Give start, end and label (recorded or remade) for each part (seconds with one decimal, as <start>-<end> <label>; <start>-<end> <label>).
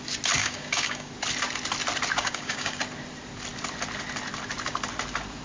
0.0-0.4 recorded; 0.4-1.1 remade; 1.1-2.2 recorded; 2.2-2.8 remade; 2.8-5.4 recorded